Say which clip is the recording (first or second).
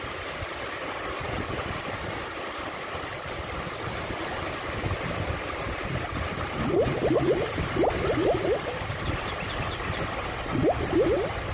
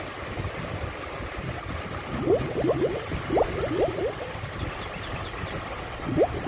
second